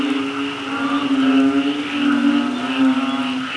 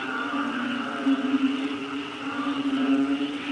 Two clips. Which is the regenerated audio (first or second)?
second